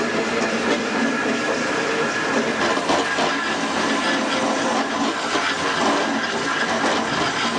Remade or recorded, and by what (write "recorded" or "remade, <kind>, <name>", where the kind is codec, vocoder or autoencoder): recorded